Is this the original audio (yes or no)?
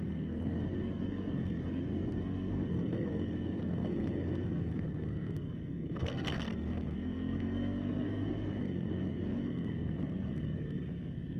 no